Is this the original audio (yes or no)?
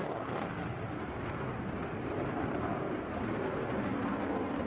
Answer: yes